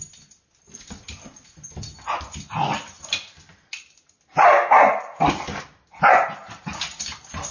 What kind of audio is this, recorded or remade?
recorded